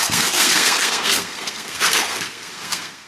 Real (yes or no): no